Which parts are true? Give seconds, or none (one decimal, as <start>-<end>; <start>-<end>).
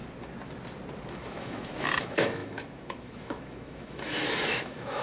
0.0-1.1